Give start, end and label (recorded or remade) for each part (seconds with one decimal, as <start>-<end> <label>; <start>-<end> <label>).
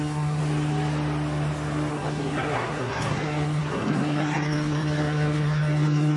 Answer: 0.0-0.4 remade; 0.4-1.9 recorded; 1.9-6.2 remade